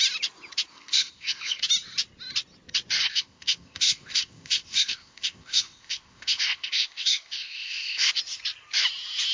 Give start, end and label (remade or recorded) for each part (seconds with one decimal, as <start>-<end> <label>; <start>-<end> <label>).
0.0-0.7 recorded; 0.7-1.6 remade; 1.6-3.0 recorded; 3.0-8.1 remade; 8.1-9.3 recorded